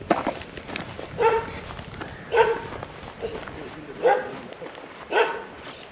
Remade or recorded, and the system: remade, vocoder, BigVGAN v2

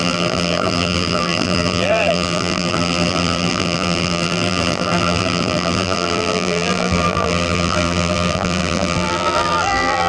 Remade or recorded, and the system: remade, vocoder, BigVGAN v2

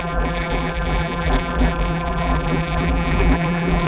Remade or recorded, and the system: remade, vocoder, BigVGAN v2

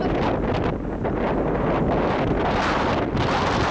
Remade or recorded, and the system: recorded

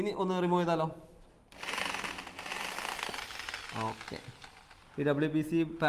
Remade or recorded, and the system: recorded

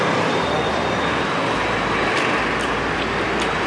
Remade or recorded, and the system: recorded